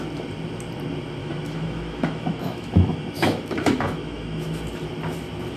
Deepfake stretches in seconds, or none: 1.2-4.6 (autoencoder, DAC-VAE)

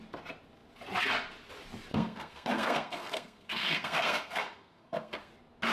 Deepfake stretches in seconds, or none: 1.9-5.3 (codec, SNAC)

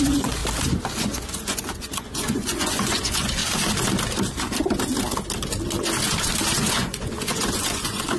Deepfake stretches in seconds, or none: 0.0-0.4 (vocoder, Vocos); 1.0-3.4; 6.7-8.2

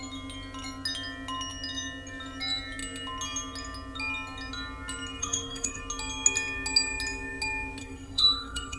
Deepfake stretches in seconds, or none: 5.2-5.8 (codec, SNAC); 7.8-8.8

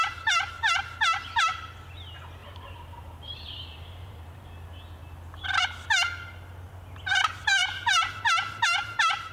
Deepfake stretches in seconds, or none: 2.4-4.4 (vocoder, BigVGAN v2); 7.6-8.1

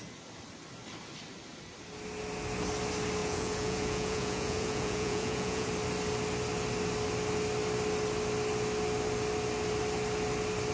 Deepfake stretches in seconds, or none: 3.2-5.7 (vocoder, Vocos)

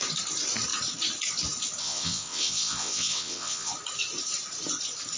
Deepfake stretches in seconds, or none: 1.8-3.7 (vocoder, WaveNeXt)